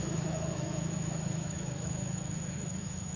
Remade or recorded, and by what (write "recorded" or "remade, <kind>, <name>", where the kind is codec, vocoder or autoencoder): remade, autoencoder, DAC-VAE